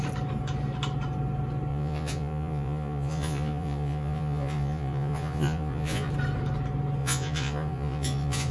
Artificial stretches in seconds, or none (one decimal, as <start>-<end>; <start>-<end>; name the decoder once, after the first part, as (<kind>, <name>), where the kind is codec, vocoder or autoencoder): 1.7-6.1 (vocoder, Vocos); 7.0-8.5